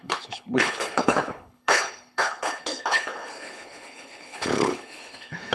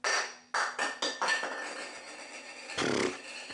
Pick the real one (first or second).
second